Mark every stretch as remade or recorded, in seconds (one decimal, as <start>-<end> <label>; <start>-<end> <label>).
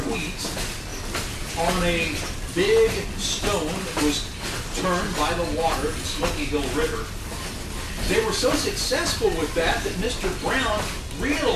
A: 0.0-5.5 recorded; 5.5-6.1 remade; 6.1-11.6 recorded